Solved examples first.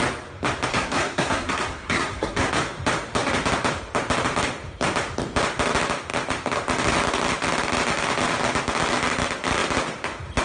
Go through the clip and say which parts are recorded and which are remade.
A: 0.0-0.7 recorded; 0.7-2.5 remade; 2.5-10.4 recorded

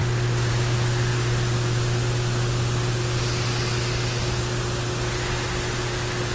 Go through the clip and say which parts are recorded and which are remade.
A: 0.0-6.3 recorded

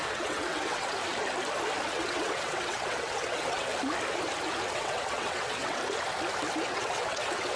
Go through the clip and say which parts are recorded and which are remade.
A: 0.0-1.0 remade; 1.0-1.9 recorded; 1.9-3.7 remade; 3.7-4.7 recorded; 4.7-5.8 remade; 5.8-6.7 recorded; 6.7-7.6 remade

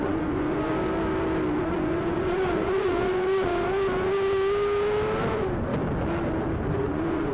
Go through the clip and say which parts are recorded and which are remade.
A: 0.0-0.7 remade; 0.7-1.6 recorded; 1.6-3.5 remade; 3.5-5.3 recorded; 5.3-5.7 remade; 5.7-6.7 recorded; 6.7-7.3 remade

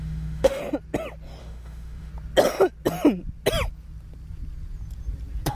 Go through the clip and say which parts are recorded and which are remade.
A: 0.0-0.6 remade; 0.6-1.4 recorded; 1.4-2.1 remade; 2.1-5.5 recorded

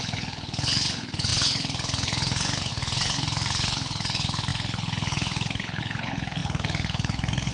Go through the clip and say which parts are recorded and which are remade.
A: 0.0-7.5 remade

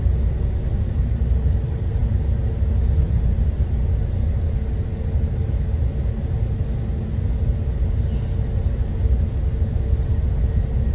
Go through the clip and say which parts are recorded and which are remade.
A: 0.0-10.9 recorded

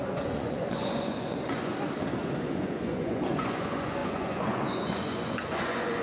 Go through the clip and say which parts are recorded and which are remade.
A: 0.0-1.7 remade; 1.7-2.3 recorded; 2.3-6.0 remade